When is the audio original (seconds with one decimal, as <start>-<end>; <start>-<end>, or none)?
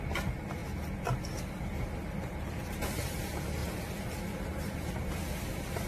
0.6-1.6; 3.6-4.4